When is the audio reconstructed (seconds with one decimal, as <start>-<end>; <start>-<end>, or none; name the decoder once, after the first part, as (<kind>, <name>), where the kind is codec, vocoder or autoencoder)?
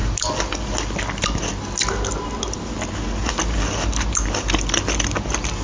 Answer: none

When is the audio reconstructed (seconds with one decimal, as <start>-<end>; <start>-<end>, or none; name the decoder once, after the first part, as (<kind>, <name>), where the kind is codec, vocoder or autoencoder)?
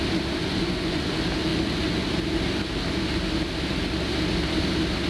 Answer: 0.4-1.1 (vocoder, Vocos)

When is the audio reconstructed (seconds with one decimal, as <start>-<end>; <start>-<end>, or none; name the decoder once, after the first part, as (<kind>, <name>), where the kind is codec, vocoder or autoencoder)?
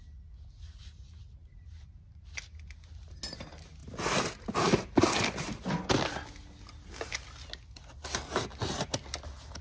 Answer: 1.2-2.2 (vocoder, BigVGAN v2)